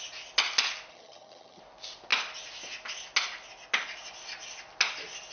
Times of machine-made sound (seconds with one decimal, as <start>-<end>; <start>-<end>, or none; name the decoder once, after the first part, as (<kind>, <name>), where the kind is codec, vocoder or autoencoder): 0.9-1.6 (vocoder, HiFi-GAN)